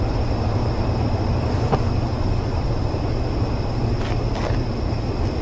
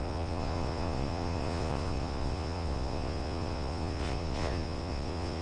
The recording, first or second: first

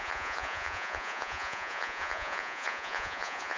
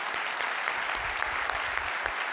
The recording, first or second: second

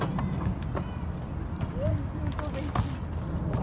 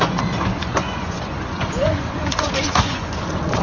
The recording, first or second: first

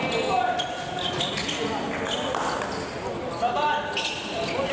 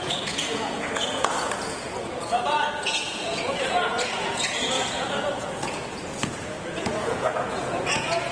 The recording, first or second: first